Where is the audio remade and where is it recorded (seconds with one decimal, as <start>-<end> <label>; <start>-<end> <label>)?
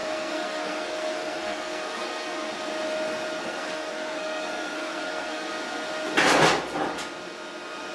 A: 0.0-2.5 remade; 2.5-3.4 recorded; 3.4-5.5 remade; 5.5-7.9 recorded